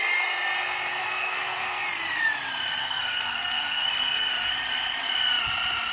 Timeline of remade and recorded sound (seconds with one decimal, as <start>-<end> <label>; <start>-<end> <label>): 0.0-0.9 recorded; 0.9-1.8 remade; 1.8-2.8 recorded; 2.8-4.3 remade; 4.3-5.9 recorded